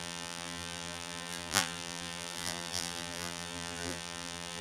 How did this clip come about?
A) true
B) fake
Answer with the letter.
B